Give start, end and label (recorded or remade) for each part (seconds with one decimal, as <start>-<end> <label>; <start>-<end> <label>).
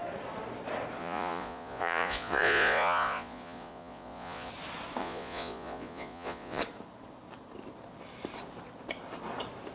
0.0-1.0 recorded; 1.0-4.5 remade; 4.5-5.0 recorded; 5.0-6.6 remade; 6.6-9.7 recorded